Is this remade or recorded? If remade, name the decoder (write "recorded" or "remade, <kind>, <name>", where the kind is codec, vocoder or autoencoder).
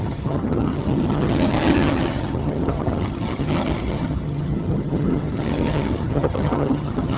remade, vocoder, HiFi-GAN